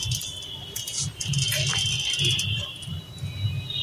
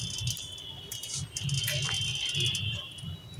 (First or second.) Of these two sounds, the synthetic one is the first